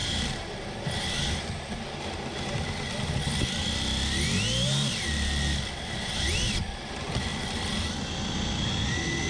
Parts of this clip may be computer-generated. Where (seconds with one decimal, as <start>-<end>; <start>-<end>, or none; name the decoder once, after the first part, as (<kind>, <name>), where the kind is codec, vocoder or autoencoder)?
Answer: none